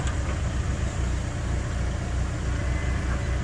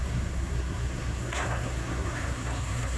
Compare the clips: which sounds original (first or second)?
first